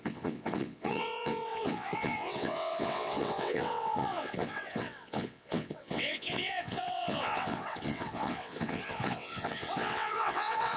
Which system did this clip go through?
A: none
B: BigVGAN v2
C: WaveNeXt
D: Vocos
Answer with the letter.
C